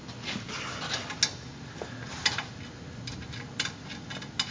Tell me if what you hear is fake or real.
real